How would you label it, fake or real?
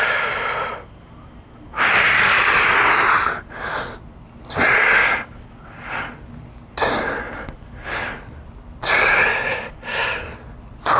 real